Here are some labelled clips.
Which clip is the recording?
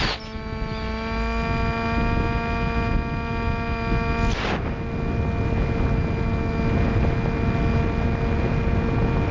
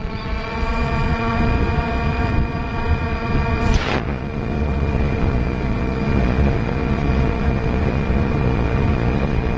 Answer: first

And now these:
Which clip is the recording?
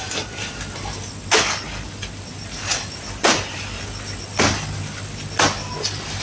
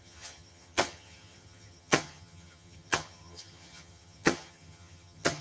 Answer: first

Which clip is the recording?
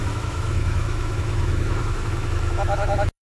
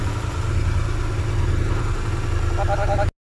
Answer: second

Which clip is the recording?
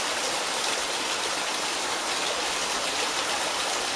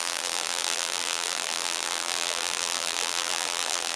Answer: first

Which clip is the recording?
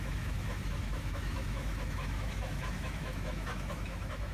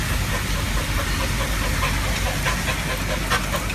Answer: second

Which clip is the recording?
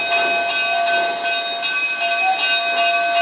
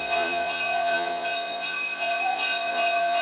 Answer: first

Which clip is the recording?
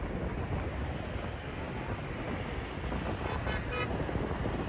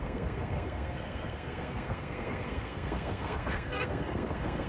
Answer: first